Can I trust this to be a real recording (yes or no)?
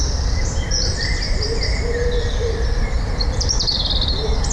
no